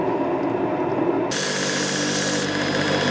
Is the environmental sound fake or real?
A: real